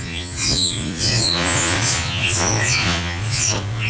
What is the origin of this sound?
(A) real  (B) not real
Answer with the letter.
B